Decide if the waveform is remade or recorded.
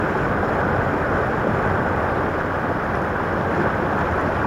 recorded